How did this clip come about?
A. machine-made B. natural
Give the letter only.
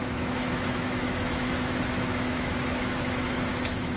A